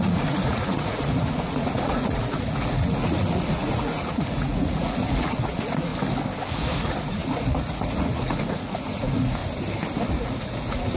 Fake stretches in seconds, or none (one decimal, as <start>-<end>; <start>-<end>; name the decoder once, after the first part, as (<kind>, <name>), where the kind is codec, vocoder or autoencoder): 0.0-5.9 (vocoder, Vocos); 6.5-9.4; 10.1-11.0